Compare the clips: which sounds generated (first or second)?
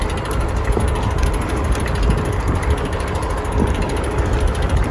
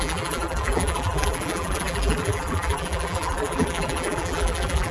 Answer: second